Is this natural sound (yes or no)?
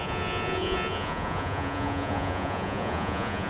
no